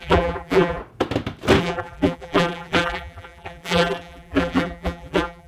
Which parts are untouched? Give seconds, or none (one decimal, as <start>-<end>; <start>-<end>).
0.8-1.6